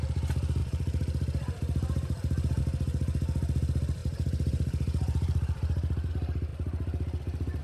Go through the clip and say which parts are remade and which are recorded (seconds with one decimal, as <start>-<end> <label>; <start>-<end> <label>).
0.0-0.6 recorded; 0.6-2.6 remade; 2.6-4.0 recorded; 4.0-6.1 remade; 6.1-7.6 recorded